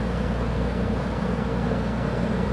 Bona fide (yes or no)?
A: no